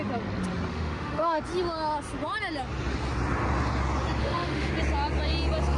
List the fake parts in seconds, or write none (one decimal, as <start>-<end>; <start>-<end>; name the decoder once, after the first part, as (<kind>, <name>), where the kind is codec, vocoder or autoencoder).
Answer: 0.7-1.4 (autoencoder, DAC-VAE); 4.2-4.7